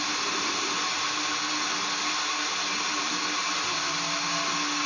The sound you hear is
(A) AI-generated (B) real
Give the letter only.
B